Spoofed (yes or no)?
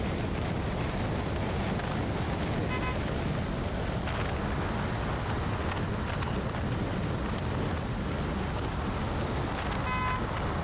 no